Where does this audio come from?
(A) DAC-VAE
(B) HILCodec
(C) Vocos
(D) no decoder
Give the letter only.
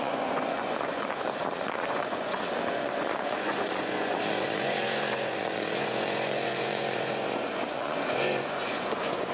C